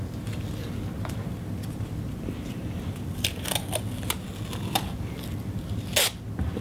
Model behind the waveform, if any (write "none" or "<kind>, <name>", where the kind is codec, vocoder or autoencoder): none